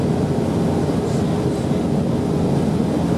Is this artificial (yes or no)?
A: no